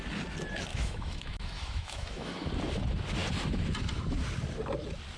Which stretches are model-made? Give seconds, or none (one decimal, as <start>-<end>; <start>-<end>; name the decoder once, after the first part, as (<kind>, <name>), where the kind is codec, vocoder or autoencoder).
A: 0.7-2.5 (autoencoder, DAC-VAE)

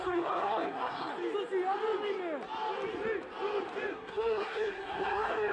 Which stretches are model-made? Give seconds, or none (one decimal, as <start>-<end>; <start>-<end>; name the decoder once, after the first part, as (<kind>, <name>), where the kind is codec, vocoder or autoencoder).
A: 0.0-1.1 (codec, SNAC); 3.9-5.5

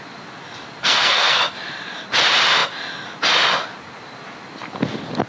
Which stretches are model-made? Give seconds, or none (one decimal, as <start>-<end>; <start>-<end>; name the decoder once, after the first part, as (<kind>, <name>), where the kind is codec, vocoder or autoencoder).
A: 0.8-1.4 (codec, SNAC)

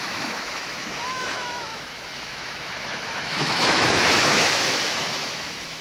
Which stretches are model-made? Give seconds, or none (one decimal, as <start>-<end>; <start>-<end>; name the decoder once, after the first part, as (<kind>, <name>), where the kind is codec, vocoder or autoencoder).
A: 0.0-5.8 (autoencoder, DAC-VAE)

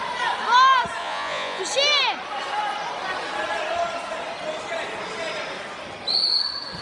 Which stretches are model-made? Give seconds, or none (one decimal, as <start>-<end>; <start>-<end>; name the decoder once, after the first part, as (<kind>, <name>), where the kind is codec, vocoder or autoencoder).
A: 1.0-1.6 (vocoder, Vocos)

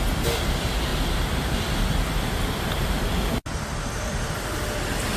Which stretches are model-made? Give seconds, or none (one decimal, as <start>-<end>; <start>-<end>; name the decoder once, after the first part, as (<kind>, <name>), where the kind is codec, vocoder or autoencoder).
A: none

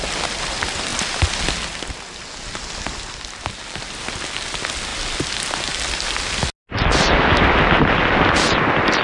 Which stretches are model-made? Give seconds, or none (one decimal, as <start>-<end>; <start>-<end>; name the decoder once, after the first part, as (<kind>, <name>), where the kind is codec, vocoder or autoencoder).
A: none

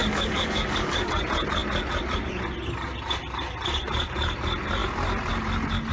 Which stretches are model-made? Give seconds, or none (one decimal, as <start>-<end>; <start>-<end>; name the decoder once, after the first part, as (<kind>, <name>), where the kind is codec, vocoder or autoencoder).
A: 0.0-1.2 (codec, DAC)